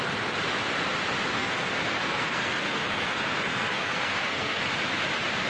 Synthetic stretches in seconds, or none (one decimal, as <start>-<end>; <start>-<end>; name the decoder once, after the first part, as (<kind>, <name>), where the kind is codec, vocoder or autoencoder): 1.3-4.6 (codec, SNAC)

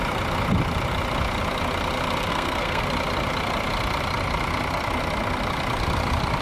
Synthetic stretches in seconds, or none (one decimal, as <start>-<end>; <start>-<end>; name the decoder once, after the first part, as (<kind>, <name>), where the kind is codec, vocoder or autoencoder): 2.3-2.8 (codec, SNAC)

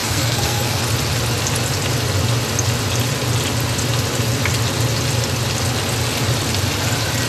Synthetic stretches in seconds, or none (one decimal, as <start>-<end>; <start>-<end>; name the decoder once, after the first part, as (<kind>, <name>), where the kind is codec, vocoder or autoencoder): 0.0-0.8 (codec, SNAC)

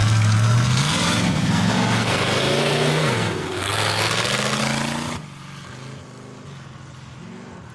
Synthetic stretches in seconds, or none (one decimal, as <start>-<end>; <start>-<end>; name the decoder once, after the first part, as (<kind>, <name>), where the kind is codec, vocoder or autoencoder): 0.0-4.6 (codec, SNAC)

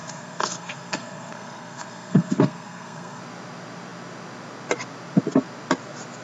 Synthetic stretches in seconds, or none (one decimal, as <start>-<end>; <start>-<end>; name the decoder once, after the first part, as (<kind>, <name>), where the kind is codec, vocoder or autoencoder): 0.0-3.2 (codec, SNAC)

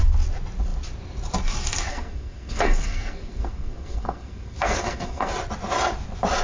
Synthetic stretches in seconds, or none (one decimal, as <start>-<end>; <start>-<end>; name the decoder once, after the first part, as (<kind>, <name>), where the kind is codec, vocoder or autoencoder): 1.9-5.3 (codec, SNAC)